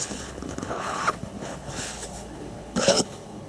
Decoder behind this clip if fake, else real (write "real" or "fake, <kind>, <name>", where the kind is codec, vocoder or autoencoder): fake, codec, HILCodec